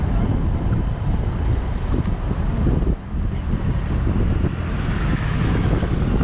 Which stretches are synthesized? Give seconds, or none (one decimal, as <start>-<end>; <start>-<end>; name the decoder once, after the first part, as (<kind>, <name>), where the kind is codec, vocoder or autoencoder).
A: none

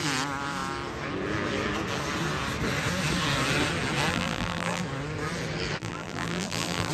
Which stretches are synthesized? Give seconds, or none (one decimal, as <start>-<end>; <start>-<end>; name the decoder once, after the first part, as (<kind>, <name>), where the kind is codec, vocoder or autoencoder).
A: 4.1-4.8 (vocoder, BigVGAN v2); 5.8-6.9

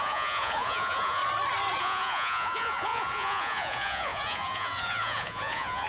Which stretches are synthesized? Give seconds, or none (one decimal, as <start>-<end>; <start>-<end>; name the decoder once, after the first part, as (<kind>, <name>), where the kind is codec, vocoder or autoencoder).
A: 0.0-1.2 (vocoder, Vocos); 1.8-5.9

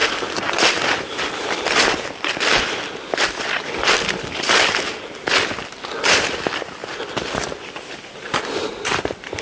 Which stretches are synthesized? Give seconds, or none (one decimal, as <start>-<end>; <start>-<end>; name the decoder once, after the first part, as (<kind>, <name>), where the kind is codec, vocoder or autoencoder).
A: 0.0-9.4 (vocoder, BigVGAN v2)

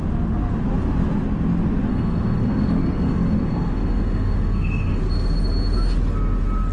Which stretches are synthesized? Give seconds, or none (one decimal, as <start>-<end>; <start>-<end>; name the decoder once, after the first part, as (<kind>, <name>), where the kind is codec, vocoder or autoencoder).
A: 1.9-5.0 (autoencoder, DAC-VAE)